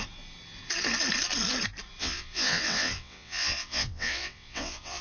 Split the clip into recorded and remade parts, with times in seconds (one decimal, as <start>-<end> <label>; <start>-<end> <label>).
0.0-2.0 recorded; 2.0-5.0 remade